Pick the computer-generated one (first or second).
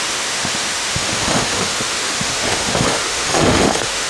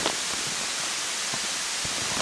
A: first